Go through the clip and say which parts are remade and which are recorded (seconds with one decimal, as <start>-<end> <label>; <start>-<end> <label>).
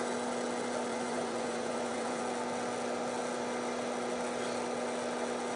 0.0-0.9 recorded; 0.9-2.2 remade; 2.2-5.6 recorded